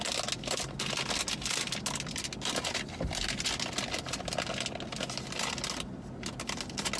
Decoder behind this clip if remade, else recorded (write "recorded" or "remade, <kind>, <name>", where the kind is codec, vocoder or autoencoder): recorded